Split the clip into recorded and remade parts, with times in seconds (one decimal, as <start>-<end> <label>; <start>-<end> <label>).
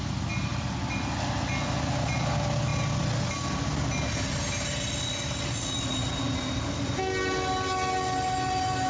0.0-8.9 recorded